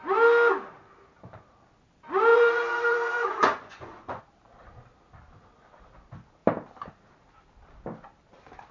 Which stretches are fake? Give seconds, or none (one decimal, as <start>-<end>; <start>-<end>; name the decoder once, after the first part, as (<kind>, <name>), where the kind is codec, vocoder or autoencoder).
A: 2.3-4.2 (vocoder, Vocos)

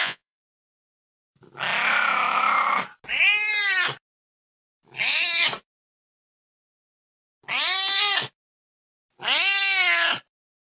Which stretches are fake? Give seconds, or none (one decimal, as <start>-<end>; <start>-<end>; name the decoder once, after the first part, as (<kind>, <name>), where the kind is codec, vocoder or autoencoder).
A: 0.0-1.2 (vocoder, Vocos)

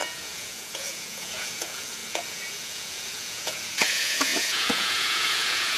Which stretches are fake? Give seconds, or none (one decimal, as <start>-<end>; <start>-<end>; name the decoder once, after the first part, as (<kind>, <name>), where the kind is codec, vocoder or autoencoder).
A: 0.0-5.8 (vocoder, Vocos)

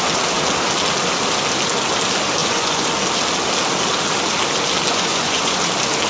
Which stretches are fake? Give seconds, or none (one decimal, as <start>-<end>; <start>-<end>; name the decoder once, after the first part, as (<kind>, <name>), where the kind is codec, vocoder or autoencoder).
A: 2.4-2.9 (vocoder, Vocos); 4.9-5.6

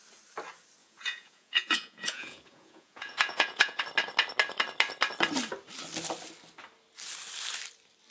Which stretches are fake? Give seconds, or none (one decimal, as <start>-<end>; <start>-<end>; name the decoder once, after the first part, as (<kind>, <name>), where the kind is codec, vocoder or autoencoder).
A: 0.8-3.8 (vocoder, Vocos)

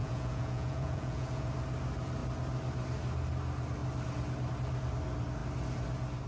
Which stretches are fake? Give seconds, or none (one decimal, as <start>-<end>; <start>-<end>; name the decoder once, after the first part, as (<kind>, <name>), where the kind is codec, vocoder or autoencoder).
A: 0.0-1.5 (vocoder, Vocos)

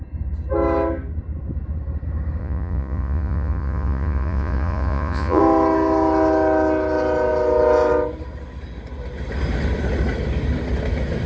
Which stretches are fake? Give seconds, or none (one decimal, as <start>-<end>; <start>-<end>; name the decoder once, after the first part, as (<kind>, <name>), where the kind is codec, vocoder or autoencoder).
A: 2.4-5.4 (vocoder, Vocos)